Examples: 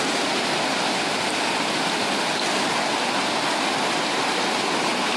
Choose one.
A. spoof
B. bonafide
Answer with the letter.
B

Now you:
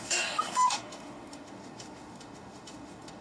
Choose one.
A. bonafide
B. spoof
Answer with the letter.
B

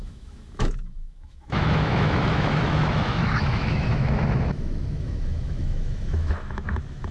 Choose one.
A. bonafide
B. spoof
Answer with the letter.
B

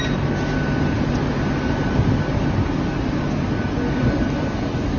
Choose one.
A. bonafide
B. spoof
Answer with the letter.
A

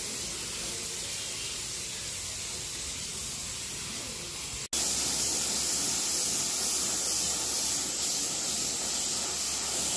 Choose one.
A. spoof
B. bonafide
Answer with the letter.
B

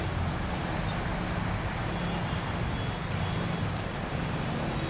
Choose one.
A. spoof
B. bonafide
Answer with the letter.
B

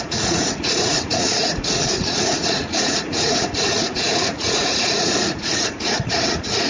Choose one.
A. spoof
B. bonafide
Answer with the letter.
A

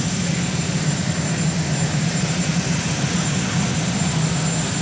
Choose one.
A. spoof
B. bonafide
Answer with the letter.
B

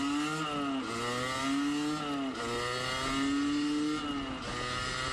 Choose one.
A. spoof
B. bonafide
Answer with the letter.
B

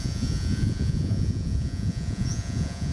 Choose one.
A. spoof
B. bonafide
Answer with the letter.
A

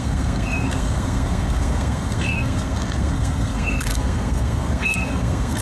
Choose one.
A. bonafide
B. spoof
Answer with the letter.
B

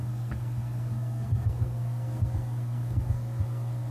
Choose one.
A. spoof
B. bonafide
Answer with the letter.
A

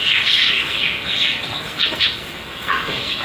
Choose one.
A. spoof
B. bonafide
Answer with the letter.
A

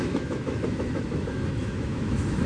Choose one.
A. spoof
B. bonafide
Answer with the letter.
A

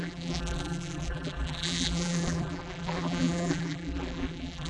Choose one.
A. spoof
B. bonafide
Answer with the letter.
A